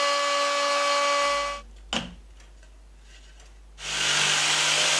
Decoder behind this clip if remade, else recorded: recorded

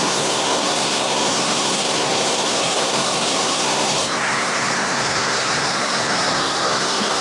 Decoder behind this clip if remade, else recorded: remade, codec, SNAC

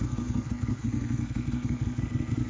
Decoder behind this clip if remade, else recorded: remade, codec, SNAC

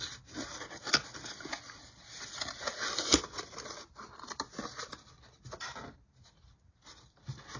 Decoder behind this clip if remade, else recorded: recorded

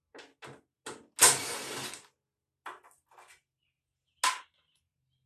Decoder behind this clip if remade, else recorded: recorded